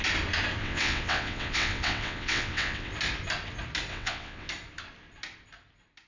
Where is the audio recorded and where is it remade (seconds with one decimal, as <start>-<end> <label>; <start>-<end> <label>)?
0.0-0.6 recorded; 0.6-2.9 remade; 2.9-3.9 recorded; 3.9-4.5 remade; 4.5-6.1 recorded